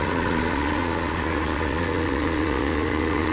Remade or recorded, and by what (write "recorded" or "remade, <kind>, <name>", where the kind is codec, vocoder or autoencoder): remade, vocoder, Vocos